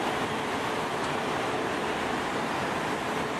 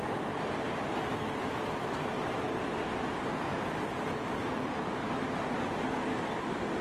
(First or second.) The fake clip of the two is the first